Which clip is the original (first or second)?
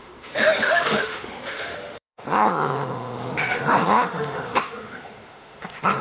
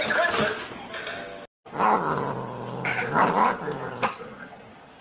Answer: second